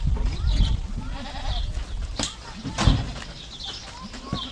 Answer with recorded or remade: recorded